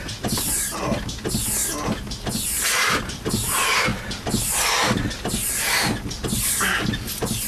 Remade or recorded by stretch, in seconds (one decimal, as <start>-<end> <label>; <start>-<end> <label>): 0.0-7.5 recorded